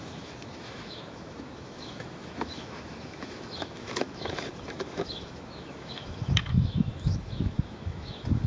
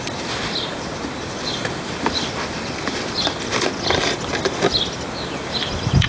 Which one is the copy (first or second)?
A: first